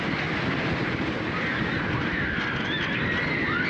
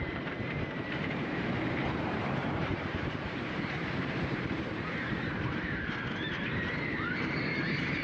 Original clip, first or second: first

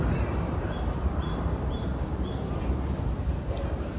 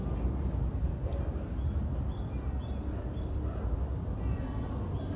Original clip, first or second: second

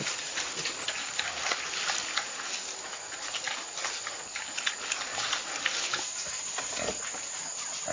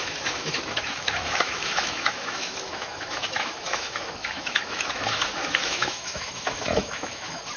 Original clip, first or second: first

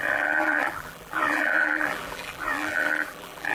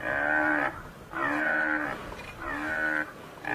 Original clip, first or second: second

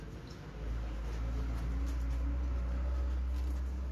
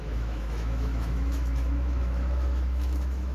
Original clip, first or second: first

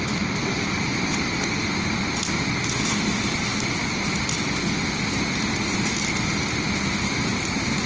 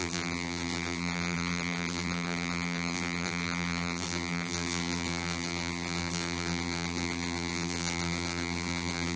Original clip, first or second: first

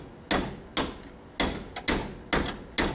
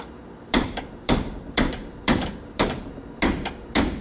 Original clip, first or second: first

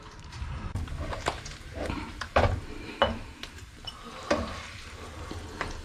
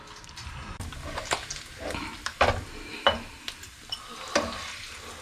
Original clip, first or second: second